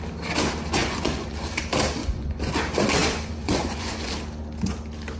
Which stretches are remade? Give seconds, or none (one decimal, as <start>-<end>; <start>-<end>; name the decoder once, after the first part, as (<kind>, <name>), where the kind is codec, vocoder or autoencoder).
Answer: 0.8-1.6 (vocoder, Vocos); 2.0-2.5; 3.0-4.1